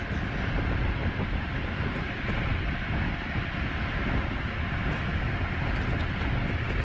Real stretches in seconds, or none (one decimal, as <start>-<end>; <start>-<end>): 0.0-6.8